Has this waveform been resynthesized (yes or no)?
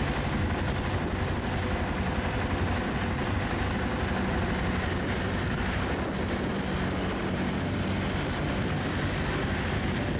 no